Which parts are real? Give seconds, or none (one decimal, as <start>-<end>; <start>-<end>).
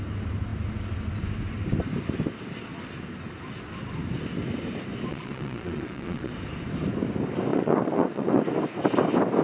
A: 0.0-5.1; 6.3-7.5; 8.4-9.4